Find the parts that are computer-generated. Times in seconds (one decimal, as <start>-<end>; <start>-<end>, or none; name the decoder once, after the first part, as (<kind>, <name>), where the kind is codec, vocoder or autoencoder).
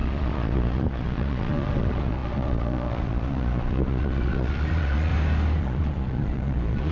0.0-5.1 (vocoder, Vocos); 5.6-6.9